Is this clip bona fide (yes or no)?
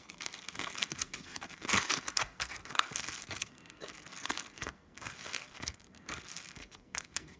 no